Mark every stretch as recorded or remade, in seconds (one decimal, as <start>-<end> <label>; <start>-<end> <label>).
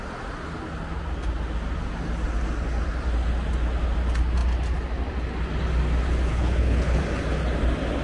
0.0-6.3 recorded; 6.3-7.0 remade; 7.0-8.0 recorded